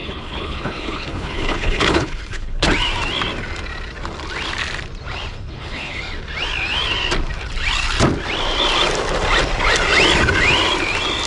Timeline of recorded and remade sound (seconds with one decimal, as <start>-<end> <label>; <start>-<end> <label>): 0.0-2.7 remade; 2.7-5.3 recorded; 5.3-6.0 remade; 6.0-11.3 recorded